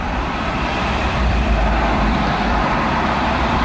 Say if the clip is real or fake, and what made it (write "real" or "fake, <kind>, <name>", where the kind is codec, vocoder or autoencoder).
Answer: fake, vocoder, BigVGAN v2